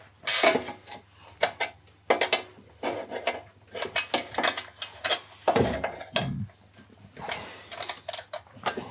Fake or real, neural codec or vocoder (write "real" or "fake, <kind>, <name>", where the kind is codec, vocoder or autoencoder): real